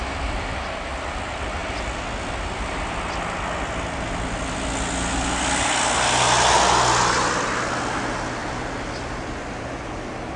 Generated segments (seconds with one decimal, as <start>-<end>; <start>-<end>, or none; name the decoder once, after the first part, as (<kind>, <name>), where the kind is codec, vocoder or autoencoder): none